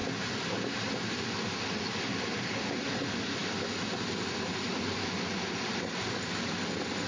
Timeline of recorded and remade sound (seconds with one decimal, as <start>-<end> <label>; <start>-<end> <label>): 0.0-7.1 recorded